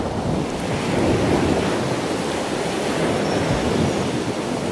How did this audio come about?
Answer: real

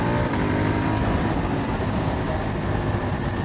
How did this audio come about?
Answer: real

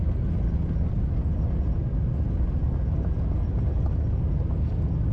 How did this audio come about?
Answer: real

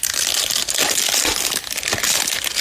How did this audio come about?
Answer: real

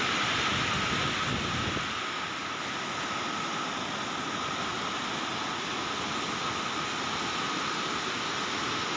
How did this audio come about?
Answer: real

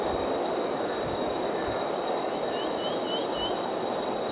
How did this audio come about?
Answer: real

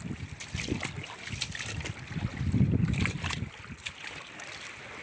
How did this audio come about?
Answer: real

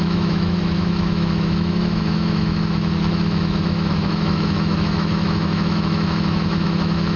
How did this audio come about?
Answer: fake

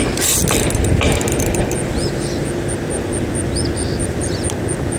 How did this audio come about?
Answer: real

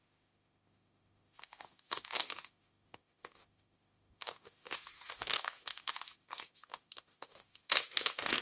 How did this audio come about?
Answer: fake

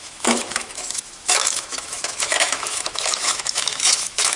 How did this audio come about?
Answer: fake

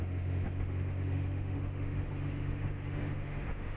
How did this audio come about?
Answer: fake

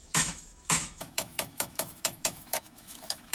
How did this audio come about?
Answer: fake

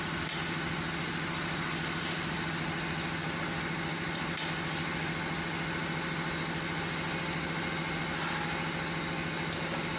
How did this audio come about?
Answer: real